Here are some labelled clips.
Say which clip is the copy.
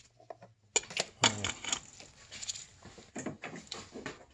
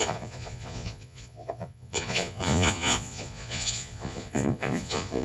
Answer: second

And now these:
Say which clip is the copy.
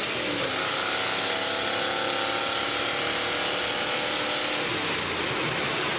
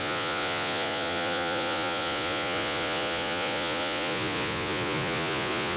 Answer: second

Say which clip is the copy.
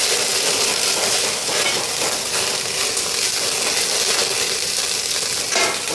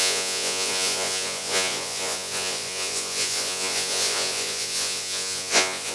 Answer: second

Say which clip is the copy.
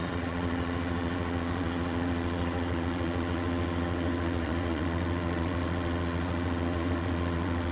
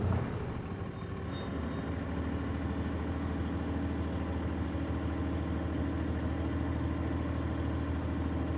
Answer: first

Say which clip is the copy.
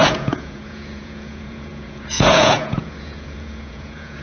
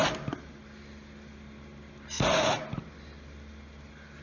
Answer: first